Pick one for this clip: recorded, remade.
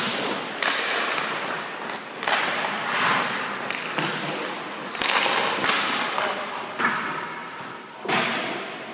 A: recorded